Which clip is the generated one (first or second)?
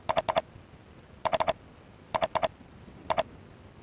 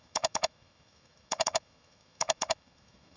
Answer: second